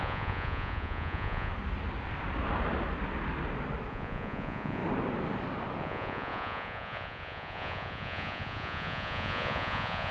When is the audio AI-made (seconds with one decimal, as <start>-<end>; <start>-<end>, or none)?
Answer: 0.0-1.5; 3.9-4.8; 5.8-10.1